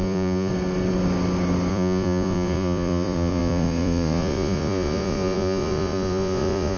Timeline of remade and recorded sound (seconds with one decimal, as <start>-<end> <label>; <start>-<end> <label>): 0.0-0.5 remade; 0.5-1.7 recorded; 1.7-6.8 remade